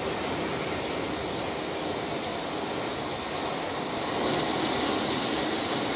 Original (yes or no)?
yes